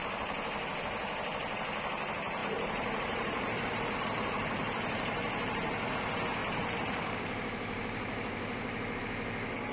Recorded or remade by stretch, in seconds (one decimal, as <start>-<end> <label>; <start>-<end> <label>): 0.0-0.7 remade; 0.7-2.4 recorded; 2.4-5.9 remade; 5.9-6.4 recorded; 6.4-9.0 remade; 9.0-9.7 recorded